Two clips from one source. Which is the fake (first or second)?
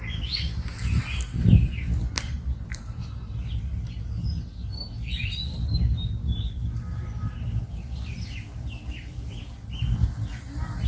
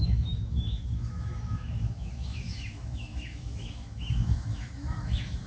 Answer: second